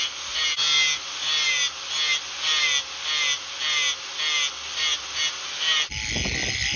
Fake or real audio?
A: real